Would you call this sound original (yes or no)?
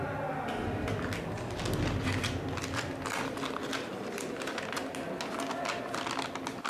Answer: yes